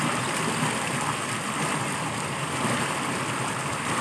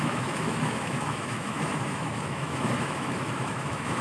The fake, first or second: second